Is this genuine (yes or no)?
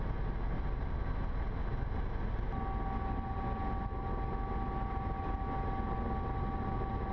yes